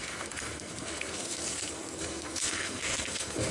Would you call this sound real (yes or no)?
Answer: no